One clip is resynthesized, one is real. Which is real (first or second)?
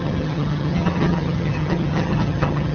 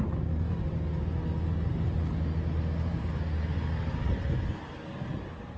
second